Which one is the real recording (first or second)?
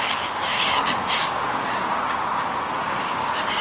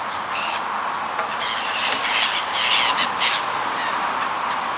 second